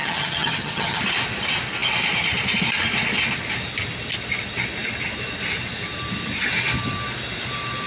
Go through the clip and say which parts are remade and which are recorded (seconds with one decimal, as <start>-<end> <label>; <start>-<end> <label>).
0.0-1.0 remade; 1.0-7.9 recorded